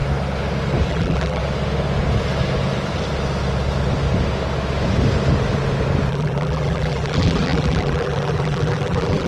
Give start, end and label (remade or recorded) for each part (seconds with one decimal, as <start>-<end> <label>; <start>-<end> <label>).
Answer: 0.0-0.9 recorded; 0.9-1.4 remade; 1.4-6.1 recorded; 6.1-9.3 remade